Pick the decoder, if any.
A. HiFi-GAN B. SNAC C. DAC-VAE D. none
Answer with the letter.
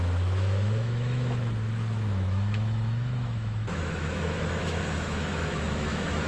C